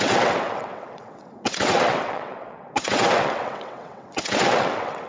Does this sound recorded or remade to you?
remade